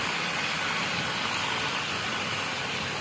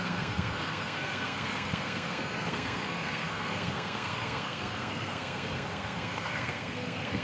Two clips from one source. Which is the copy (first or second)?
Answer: second